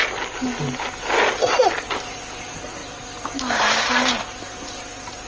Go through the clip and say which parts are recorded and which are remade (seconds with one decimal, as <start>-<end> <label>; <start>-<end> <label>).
0.0-5.3 recorded